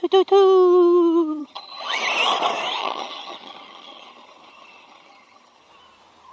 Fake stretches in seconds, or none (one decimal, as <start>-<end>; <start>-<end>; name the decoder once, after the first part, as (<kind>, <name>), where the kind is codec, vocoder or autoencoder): 1.4-2.0 (vocoder, HiFi-GAN); 2.8-5.7